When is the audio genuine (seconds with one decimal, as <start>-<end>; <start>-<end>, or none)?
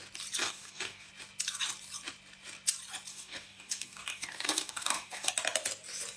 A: 0.0-0.4; 1.1-3.1; 5.3-6.2